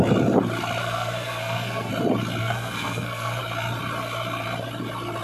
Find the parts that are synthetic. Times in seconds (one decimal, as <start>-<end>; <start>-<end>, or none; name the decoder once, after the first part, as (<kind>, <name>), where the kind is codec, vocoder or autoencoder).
0.8-1.9 (codec, SNAC); 2.4-3.4